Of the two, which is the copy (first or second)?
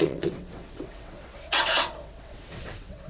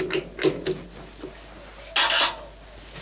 first